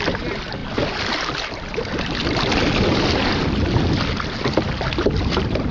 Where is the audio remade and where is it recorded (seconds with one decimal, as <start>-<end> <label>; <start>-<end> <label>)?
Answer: 0.0-5.7 recorded